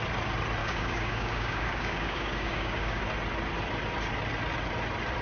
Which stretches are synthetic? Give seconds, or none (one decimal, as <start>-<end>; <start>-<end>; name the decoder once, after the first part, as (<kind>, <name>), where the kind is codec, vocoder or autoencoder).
0.6-3.0 (codec, DAC)